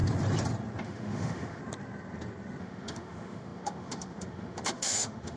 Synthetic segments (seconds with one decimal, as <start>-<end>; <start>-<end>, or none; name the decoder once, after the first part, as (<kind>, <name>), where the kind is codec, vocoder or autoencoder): 0.8-1.6 (autoencoder, DAC-VAE); 2.6-5.4